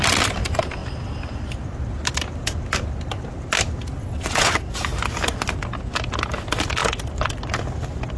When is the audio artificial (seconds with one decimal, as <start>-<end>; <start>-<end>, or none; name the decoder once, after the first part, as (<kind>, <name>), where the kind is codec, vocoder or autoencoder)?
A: 4.0-4.6 (vocoder, WaveNeXt)